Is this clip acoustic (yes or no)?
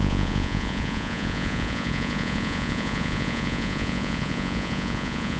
no